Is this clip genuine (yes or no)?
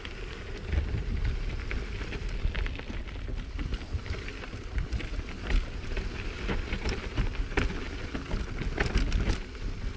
yes